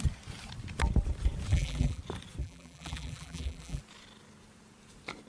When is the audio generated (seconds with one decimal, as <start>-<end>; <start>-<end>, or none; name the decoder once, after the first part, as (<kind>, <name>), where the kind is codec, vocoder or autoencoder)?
1.5-2.0 (vocoder, BigVGAN v2); 2.4-3.8